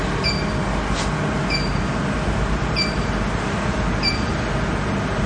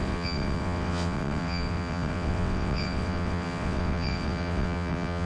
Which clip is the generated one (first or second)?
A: second